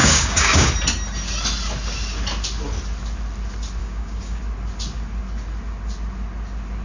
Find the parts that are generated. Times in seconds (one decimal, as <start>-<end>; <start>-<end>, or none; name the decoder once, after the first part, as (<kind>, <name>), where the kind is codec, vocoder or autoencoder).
0.0-0.7 (codec, DAC); 3.8-4.4